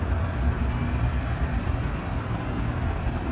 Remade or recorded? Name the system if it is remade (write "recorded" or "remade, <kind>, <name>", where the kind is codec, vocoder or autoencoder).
recorded